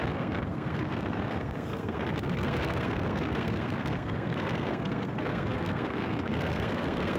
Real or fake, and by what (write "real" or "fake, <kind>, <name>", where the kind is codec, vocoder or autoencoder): fake, codec, SNAC